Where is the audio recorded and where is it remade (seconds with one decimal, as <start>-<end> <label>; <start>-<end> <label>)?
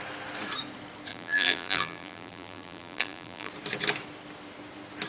0.0-1.1 recorded; 1.1-3.5 remade; 3.5-5.1 recorded